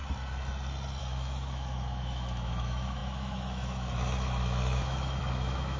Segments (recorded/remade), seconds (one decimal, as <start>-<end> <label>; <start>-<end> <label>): 0.0-1.0 recorded; 1.0-5.8 remade